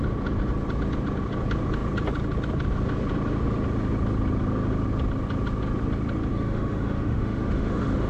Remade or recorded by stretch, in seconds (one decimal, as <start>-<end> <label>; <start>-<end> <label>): 0.0-6.3 recorded; 6.3-8.1 remade